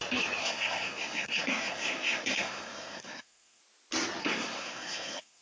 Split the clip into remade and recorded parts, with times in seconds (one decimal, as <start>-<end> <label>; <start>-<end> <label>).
0.0-0.4 recorded; 0.4-3.6 remade; 3.6-4.2 recorded; 4.2-5.4 remade

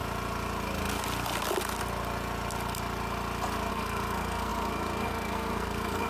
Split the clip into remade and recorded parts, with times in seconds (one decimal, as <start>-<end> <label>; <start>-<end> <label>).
0.0-3.7 recorded; 3.7-6.1 remade